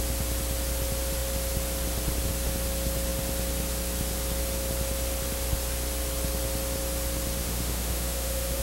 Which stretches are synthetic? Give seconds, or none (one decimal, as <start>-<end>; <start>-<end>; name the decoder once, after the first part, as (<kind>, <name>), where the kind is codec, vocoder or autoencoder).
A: 7.4-8.6 (autoencoder, DAC-VAE)